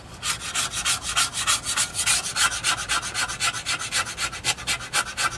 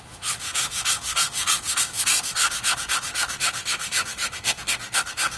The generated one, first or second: second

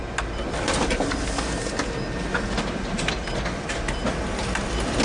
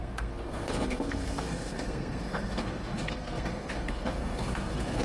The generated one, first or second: second